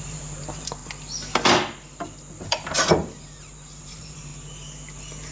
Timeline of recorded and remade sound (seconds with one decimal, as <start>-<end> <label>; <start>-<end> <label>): 0.0-0.8 remade; 0.8-2.5 recorded; 2.5-3.0 remade; 3.0-3.8 recorded; 3.8-4.3 remade; 4.3-5.3 recorded